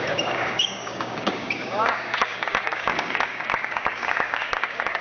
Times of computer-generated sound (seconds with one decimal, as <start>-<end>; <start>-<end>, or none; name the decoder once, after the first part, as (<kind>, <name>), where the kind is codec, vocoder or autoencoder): 0.0-5.0 (codec, DAC)